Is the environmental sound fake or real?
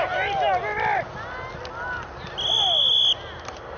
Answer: real